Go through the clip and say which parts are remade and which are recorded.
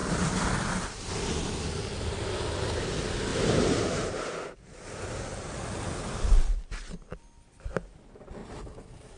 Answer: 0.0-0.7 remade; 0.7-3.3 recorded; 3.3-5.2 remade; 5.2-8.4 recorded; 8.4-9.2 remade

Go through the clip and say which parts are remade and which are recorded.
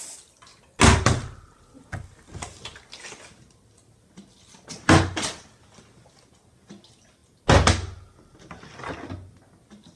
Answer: 0.0-10.0 recorded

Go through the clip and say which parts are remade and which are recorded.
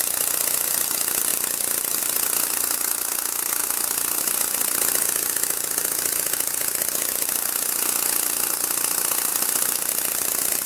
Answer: 0.0-9.3 recorded; 9.3-9.9 remade; 9.9-10.7 recorded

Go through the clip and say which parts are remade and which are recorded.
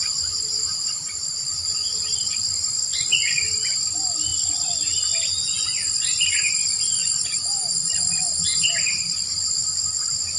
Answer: 0.0-1.8 recorded; 1.8-2.9 remade; 2.9-4.3 recorded; 4.3-9.4 remade; 9.4-10.4 recorded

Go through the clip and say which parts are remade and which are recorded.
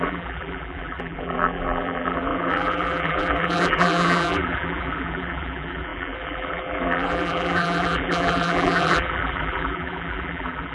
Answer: 0.0-10.7 remade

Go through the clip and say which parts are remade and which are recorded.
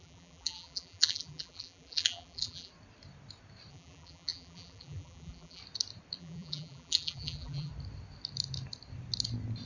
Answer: 0.0-2.7 remade; 2.7-3.7 recorded; 3.7-5.6 remade; 5.6-6.2 recorded; 6.2-7.7 remade; 7.7-9.7 recorded